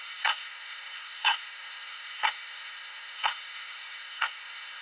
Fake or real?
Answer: fake